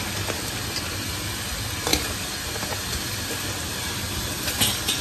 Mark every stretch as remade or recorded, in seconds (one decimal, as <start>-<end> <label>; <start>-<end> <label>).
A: 0.0-1.9 recorded; 1.9-3.8 remade; 3.8-5.0 recorded